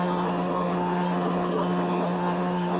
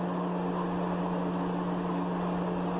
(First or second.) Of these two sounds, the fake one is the first